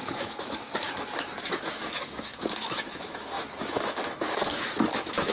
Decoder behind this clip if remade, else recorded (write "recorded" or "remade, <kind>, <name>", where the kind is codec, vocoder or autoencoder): remade, autoencoder, DAC-VAE